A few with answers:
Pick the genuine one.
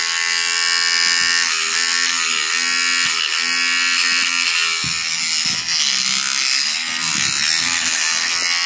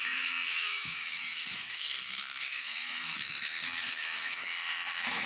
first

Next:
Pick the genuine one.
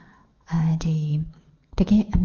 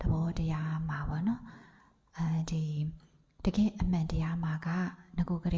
second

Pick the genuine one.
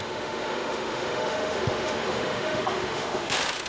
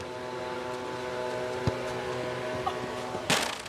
second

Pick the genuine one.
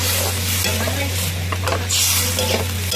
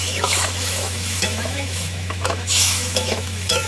first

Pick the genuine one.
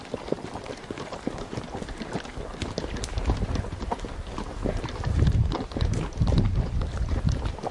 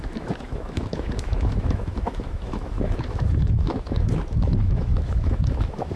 first